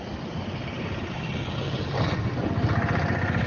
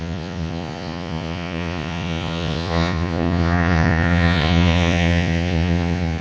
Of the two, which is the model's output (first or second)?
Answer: second